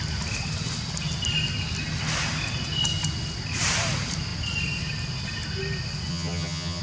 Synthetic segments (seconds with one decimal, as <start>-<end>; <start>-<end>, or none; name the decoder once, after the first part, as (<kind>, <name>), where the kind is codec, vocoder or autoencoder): 6.1-6.8 (vocoder, HiFi-GAN)